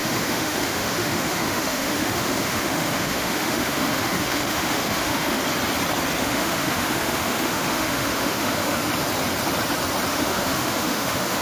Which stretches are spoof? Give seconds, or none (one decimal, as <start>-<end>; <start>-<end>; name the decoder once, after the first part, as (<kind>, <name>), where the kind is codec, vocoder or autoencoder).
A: 0.0-5.4 (autoencoder, DAC-VAE); 6.2-8.8; 10.1-11.4